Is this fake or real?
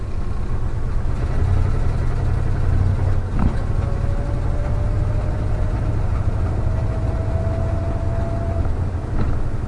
real